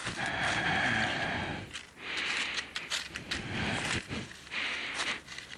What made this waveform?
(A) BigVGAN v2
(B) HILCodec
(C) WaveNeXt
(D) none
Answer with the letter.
D